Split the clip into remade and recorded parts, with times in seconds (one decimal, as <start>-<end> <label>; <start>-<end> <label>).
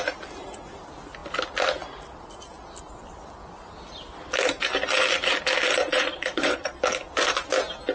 0.0-5.8 recorded; 5.8-6.8 remade; 6.8-7.9 recorded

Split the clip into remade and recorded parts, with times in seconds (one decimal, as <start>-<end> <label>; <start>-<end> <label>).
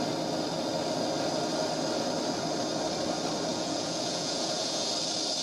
0.0-3.5 recorded; 3.5-4.9 remade; 4.9-5.4 recorded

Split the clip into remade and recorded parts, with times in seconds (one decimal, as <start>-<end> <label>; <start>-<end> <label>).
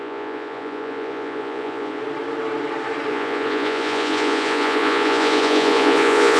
0.0-2.0 remade; 2.0-3.1 recorded; 3.1-6.4 remade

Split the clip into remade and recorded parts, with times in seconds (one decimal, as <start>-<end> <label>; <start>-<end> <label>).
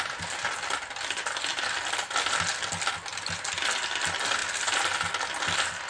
0.0-5.9 recorded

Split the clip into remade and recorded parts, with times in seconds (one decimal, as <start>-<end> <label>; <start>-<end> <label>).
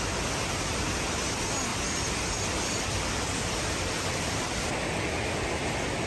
0.0-6.1 recorded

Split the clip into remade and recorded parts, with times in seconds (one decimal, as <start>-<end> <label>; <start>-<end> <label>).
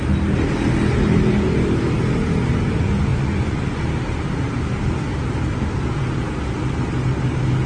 0.0-3.1 recorded; 3.1-3.8 remade; 3.8-7.7 recorded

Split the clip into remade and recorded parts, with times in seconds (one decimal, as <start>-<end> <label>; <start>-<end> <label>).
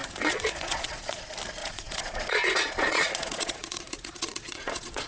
0.0-1.2 remade; 1.2-1.6 recorded; 1.6-5.1 remade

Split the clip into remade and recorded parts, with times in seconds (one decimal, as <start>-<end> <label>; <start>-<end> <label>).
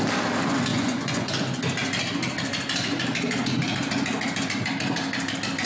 0.0-0.7 recorded; 0.7-1.3 remade; 1.3-5.7 recorded